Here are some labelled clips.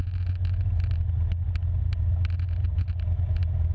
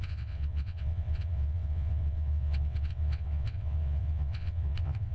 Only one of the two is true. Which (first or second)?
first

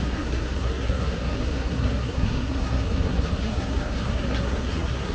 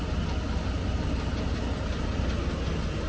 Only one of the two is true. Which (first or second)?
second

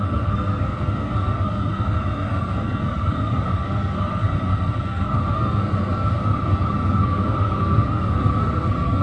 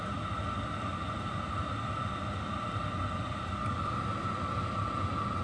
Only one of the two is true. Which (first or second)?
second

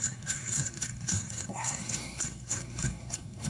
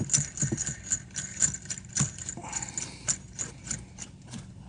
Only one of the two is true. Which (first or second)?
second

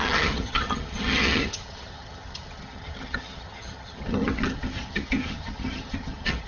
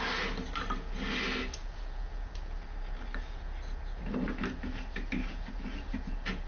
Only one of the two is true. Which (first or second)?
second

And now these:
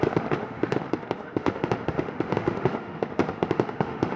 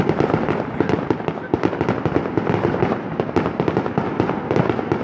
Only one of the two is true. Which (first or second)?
second